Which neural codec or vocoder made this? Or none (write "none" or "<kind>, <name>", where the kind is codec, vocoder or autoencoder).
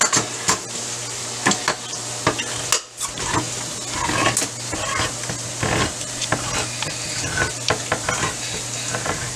none